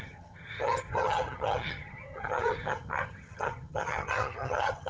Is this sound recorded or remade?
remade